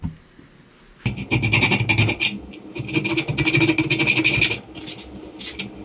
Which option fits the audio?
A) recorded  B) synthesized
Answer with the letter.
A